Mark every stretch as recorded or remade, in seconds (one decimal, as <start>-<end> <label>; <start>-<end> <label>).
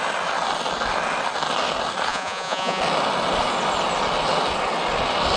0.0-2.1 recorded; 2.1-2.8 remade; 2.8-5.4 recorded